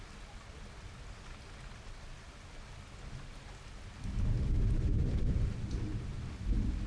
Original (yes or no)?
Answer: yes